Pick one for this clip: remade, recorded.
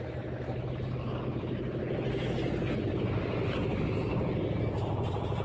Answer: recorded